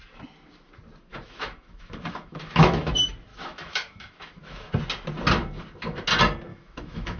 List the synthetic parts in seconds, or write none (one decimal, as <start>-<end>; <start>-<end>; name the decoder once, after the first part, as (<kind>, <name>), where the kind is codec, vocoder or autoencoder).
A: 1.1-2.9 (autoencoder, DAC-VAE); 3.3-4.7; 6.5-7.2